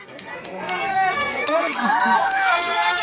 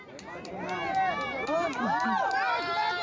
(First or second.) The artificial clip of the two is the first